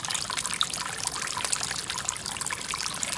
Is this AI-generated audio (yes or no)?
no